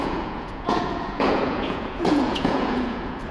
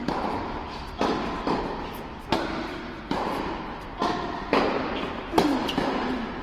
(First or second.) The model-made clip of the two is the first